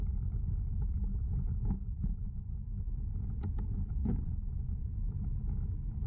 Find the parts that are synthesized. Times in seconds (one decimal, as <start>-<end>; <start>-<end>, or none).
1.8-2.6; 4.0-4.9